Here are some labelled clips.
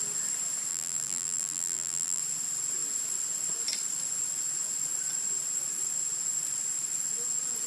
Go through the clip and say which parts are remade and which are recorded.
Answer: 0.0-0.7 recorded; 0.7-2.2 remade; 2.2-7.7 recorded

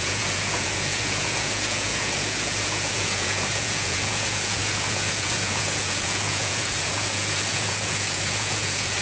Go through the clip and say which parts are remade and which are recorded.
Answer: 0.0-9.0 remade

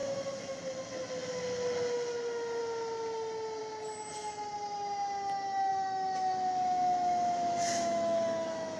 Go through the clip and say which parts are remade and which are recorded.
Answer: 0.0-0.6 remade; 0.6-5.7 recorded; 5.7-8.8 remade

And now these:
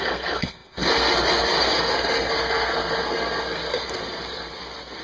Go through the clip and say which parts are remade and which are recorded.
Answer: 0.0-5.0 remade